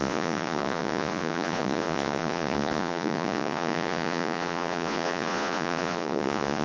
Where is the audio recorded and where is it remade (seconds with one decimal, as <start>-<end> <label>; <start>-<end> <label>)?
0.0-6.6 remade